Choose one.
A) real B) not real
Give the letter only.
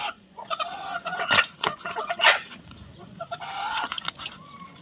B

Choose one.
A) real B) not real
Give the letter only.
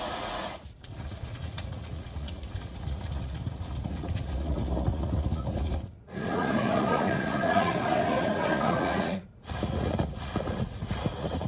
B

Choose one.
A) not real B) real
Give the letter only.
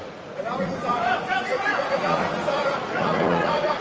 A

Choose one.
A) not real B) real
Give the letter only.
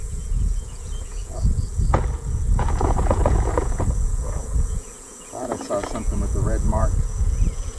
A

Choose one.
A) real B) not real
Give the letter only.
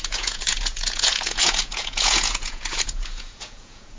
B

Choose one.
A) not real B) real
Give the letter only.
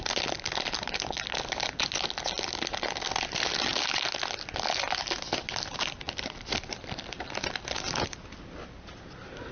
B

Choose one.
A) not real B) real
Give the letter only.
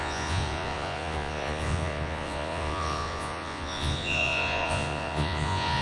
A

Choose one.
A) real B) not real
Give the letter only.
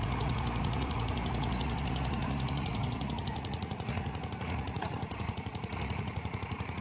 B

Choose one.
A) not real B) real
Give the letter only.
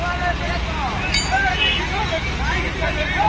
B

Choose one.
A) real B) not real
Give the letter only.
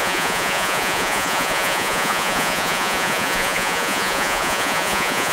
B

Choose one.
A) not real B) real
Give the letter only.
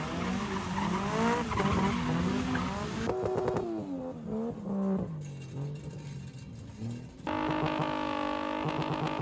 B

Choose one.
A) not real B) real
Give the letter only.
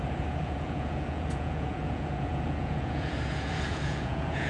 A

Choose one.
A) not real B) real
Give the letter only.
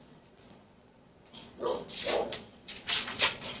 A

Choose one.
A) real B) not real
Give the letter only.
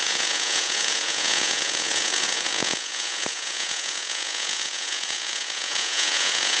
B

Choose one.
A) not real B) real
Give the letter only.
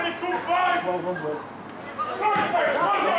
B